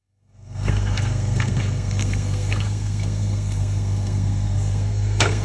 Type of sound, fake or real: fake